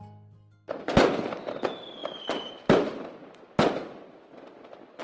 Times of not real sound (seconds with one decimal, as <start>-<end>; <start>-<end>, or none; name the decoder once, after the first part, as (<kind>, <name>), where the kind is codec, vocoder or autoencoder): none